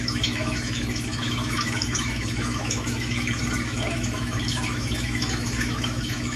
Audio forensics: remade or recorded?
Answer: remade